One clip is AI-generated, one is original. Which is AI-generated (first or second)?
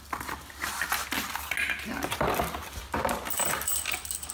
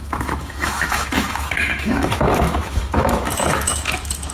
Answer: second